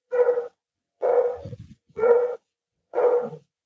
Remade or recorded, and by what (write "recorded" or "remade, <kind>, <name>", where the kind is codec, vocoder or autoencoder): remade, vocoder, WaveNeXt